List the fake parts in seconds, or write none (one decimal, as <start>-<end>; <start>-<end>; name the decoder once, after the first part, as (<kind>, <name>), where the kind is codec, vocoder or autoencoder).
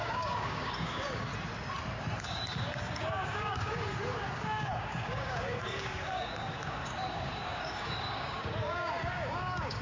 0.0-1.3 (codec, DAC); 2.3-9.8